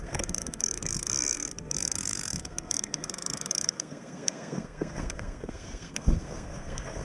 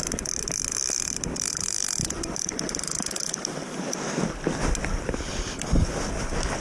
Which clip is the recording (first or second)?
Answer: second